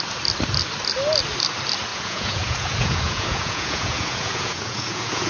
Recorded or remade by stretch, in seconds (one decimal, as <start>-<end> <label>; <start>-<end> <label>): 0.0-1.9 recorded; 1.9-5.3 remade